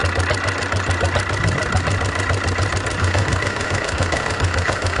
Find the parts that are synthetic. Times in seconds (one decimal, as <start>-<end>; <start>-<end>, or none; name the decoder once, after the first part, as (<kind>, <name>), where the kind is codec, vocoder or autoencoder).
3.0-5.0 (autoencoder, DAC-VAE)

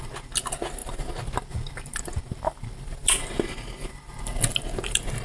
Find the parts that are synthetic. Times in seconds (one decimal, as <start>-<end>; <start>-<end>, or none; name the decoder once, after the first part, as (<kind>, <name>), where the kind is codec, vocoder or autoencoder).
none